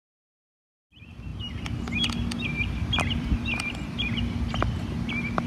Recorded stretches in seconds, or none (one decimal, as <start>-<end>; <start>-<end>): 0.0-5.5